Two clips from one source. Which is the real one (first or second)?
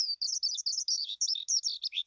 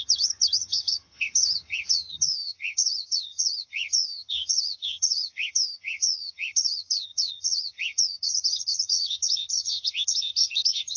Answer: first